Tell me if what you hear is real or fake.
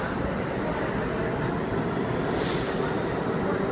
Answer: real